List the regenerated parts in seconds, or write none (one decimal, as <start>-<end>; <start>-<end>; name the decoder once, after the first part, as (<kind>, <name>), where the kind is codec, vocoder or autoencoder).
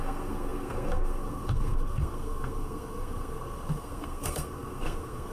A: 0.0-5.3 (codec, SNAC)